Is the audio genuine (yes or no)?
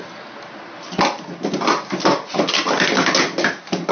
yes